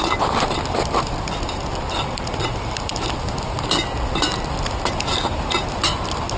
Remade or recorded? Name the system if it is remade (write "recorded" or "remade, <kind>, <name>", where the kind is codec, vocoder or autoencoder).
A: recorded